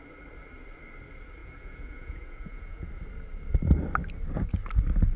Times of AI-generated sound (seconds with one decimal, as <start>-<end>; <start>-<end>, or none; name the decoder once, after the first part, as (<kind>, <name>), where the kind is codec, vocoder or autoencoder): 1.4-2.9 (vocoder, Vocos)